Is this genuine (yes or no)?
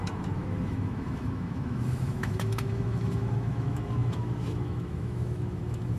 no